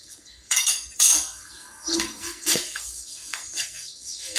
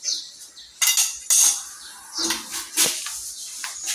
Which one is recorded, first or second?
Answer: second